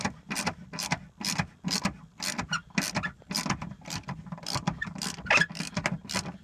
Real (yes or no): yes